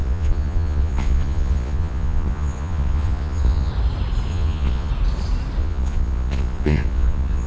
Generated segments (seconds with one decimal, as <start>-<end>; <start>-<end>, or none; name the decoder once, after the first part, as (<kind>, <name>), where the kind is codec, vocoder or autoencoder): 0.0-3.7 (vocoder, Vocos); 4.3-4.9; 5.6-7.5